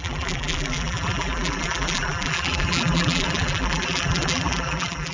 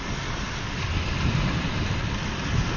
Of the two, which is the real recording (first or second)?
second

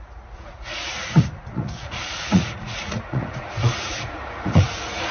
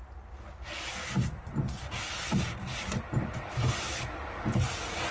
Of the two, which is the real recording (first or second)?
second